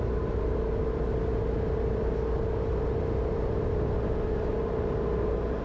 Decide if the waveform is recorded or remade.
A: recorded